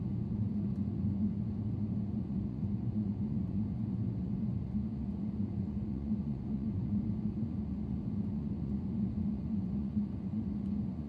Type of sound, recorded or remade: remade